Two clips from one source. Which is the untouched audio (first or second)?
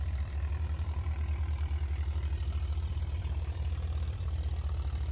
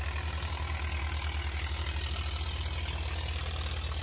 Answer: second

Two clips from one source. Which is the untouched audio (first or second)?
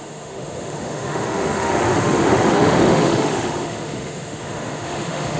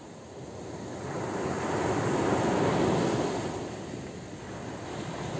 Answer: second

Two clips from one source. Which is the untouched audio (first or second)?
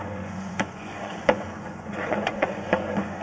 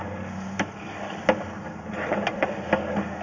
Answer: second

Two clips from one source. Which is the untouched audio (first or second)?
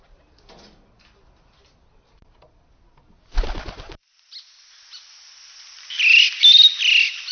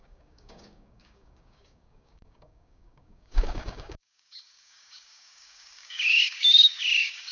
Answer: first